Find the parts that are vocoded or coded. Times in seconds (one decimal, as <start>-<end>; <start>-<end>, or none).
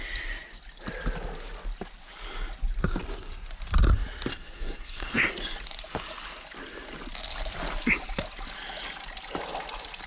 4.3-5.3